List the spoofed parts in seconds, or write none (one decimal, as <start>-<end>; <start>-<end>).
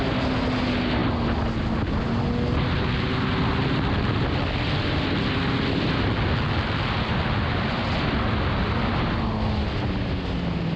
none